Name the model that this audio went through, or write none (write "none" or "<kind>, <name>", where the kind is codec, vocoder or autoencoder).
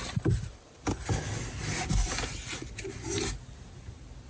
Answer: none